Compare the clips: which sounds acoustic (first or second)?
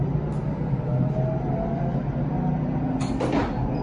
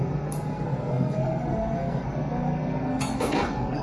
first